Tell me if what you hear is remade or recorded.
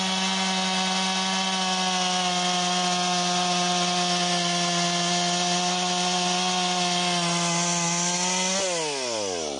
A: recorded